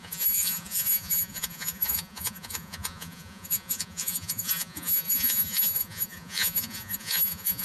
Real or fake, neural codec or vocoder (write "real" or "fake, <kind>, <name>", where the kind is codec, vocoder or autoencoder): fake, vocoder, Vocos